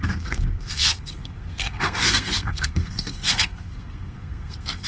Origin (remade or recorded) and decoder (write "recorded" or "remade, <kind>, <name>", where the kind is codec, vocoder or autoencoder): remade, codec, SNAC